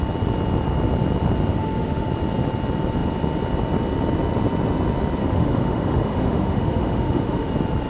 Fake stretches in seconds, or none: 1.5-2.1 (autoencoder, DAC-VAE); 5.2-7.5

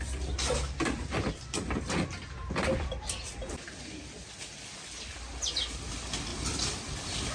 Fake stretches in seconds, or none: none

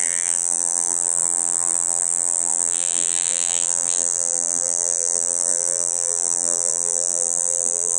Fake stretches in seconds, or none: 0.0-8.0 (vocoder, BigVGAN v2)

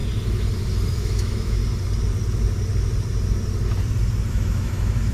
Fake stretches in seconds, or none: 0.9-1.6 (autoencoder, DAC-VAE); 4.3-5.1

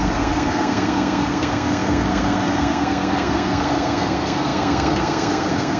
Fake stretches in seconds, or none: 0.0-5.8 (codec, SNAC)